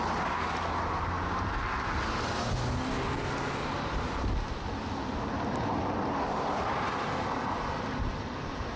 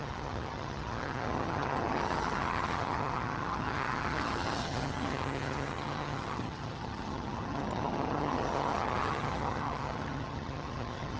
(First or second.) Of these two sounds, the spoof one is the second